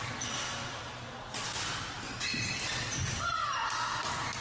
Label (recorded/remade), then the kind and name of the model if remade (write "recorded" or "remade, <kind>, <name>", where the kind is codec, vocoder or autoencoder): recorded